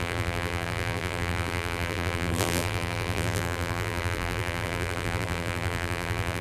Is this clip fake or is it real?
fake